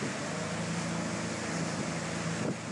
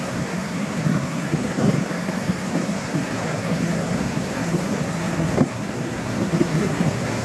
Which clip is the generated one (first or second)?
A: second